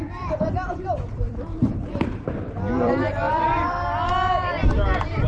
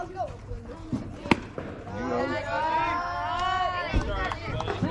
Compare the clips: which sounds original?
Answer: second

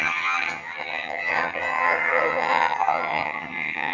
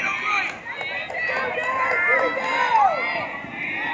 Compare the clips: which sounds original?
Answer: second